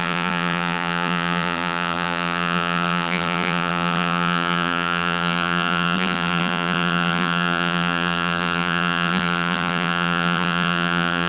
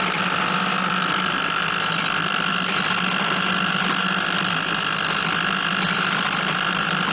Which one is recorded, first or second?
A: second